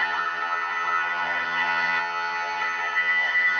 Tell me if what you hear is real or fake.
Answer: fake